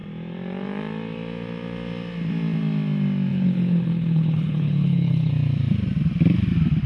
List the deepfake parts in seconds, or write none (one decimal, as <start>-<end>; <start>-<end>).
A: 3.3-5.3